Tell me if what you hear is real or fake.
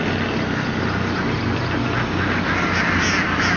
real